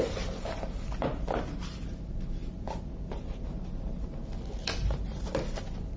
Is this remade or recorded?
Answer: recorded